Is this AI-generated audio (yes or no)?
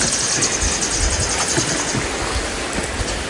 no